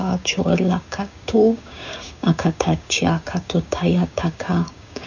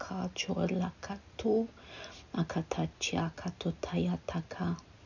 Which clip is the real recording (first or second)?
second